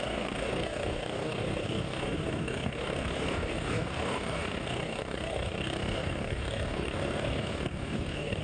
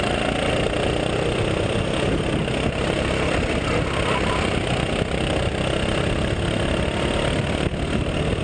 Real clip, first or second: second